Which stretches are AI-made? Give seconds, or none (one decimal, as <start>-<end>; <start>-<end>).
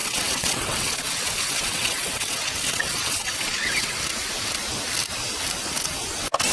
0.0-3.9